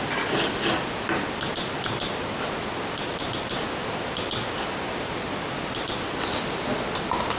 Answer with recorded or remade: recorded